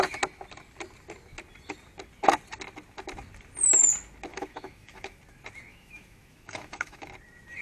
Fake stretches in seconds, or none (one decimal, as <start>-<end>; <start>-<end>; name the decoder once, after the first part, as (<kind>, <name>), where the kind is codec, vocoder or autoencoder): 4.3-5.2 (autoencoder, DAC-VAE); 5.7-7.1